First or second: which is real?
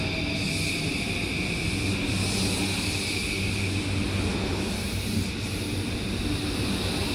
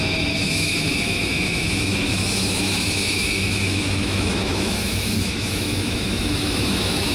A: first